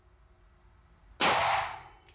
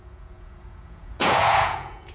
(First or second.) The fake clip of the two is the second